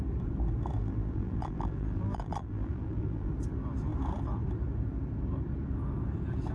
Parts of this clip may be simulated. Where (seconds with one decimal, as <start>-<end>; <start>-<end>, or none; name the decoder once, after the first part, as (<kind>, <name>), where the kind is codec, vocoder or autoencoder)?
0.8-3.3 (vocoder, BigVGAN v2)